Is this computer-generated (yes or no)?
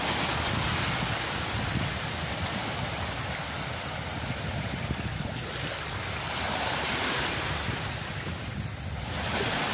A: no